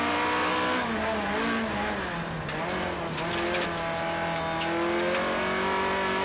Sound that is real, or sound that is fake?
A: real